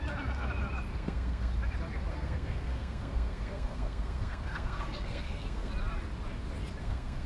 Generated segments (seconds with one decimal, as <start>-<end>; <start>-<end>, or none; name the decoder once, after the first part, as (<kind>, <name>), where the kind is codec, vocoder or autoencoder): 0.9-1.5 (codec, SNAC); 2.1-5.7; 6.8-7.3